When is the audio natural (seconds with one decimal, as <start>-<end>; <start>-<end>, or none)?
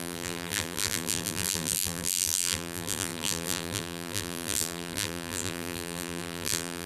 none